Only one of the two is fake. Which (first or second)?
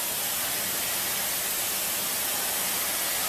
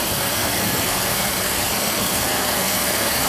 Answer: second